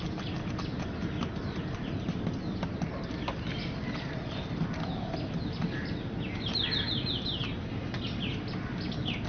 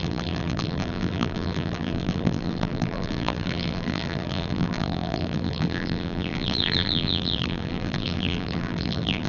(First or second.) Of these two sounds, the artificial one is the second